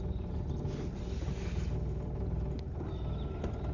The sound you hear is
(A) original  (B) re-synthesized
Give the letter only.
A